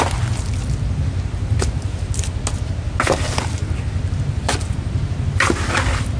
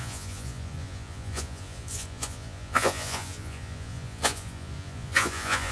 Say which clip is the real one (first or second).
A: first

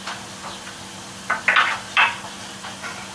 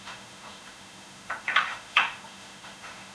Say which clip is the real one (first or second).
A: first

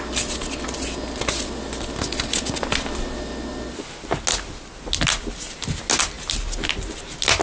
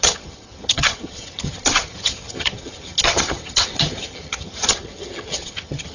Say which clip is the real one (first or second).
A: first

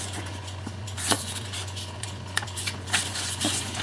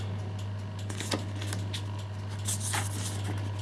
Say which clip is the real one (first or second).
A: second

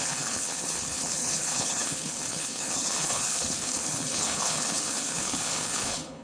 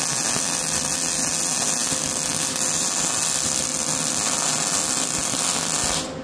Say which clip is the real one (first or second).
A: second